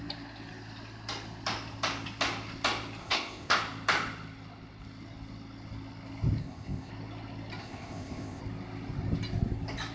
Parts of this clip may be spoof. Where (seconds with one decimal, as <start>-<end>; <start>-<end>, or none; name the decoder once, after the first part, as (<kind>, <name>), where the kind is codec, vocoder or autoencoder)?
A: 3.0-3.6 (codec, ZipCodec); 6.4-6.9; 7.6-8.4

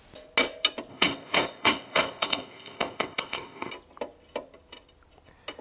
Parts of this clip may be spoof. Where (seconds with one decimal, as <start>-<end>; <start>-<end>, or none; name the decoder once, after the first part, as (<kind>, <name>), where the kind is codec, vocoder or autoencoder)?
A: 0.9-3.7 (codec, ZipCodec)

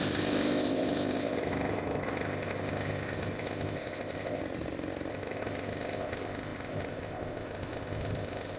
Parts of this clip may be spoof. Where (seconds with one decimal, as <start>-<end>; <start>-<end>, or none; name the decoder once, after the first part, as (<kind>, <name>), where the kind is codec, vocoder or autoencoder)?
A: 0.0-4.4 (codec, ZipCodec); 5.1-8.6

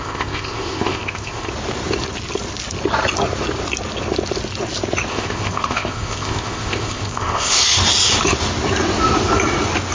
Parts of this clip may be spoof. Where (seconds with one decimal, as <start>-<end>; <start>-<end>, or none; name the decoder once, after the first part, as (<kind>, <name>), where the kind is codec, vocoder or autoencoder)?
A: 0.0-1.5 (codec, ZipCodec); 5.1-7.6

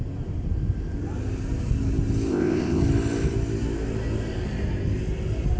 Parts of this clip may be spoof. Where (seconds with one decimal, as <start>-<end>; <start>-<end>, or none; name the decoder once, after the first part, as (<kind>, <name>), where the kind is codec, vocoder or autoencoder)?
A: 2.3-2.8 (codec, ZipCodec)

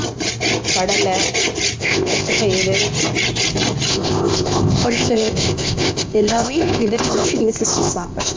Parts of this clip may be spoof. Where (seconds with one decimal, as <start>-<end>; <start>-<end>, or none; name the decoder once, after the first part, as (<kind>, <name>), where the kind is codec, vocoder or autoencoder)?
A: 1.8-2.4 (codec, ZipCodec); 3.9-8.4

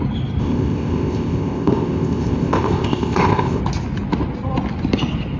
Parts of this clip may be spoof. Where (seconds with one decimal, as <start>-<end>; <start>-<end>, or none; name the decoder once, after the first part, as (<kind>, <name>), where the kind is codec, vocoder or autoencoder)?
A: 0.4-3.6 (codec, ZipCodec)

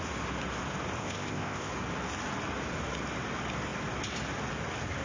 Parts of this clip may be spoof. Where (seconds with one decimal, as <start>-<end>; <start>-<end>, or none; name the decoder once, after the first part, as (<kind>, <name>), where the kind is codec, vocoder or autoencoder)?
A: 1.0-1.7 (codec, ZipCodec)